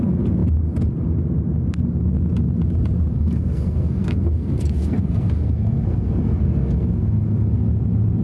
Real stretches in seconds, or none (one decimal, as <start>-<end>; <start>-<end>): 0.0-3.1; 7.7-8.2